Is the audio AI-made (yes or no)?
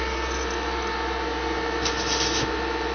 no